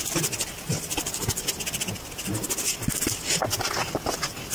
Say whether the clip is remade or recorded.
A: recorded